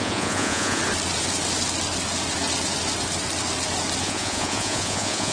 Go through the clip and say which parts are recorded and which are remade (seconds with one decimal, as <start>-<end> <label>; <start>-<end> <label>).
0.0-0.8 remade; 0.8-4.0 recorded; 4.0-5.3 remade